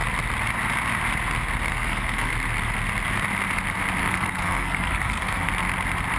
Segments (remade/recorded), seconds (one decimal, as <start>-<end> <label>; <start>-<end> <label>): 0.0-1.7 recorded; 1.7-2.3 remade; 2.3-4.0 recorded; 4.0-5.5 remade; 5.5-6.2 recorded